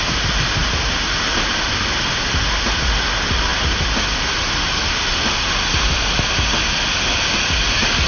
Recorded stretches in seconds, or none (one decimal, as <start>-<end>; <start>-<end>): 0.0-8.1

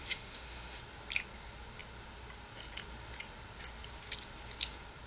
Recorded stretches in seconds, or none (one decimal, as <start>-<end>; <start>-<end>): 0.8-5.1

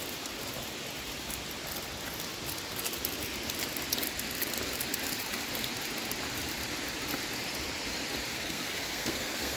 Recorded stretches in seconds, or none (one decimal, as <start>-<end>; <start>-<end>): 0.0-8.3

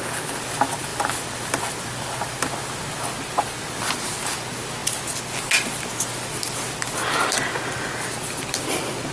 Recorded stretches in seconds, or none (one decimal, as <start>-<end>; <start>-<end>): 0.0-9.1

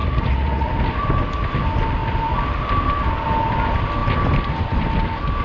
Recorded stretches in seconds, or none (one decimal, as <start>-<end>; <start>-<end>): 0.7-5.4

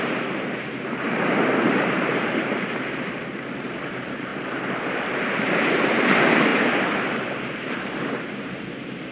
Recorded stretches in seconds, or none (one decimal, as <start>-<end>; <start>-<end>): 4.3-5.4

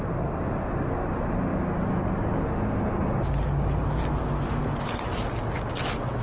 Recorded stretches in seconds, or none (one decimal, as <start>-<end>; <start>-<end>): 0.0-6.2